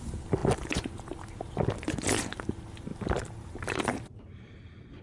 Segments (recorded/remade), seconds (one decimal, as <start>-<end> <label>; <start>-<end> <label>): 0.0-2.9 recorded; 2.9-5.0 remade